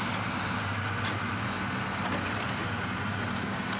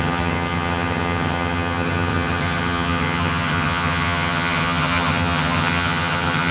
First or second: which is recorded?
first